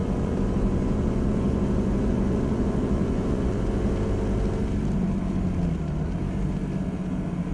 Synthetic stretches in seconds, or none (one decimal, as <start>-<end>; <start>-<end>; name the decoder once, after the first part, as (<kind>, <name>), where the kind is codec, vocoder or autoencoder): 0.0-3.9 (vocoder, Vocos)